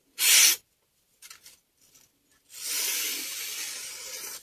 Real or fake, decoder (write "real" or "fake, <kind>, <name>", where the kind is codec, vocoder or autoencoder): real